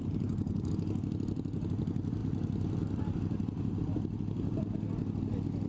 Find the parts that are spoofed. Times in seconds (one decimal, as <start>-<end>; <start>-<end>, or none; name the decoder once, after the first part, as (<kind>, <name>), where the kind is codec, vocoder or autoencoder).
0.0-0.7 (vocoder, BigVGAN v2)